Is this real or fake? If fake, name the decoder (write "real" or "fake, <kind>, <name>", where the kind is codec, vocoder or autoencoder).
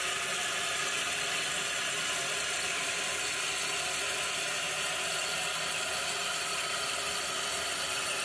real